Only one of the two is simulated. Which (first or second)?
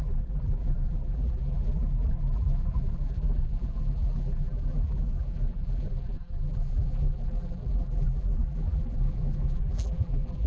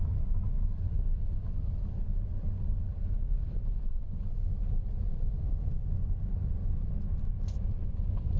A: first